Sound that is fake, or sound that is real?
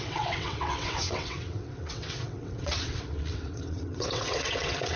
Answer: fake